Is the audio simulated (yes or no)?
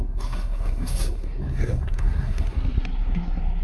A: yes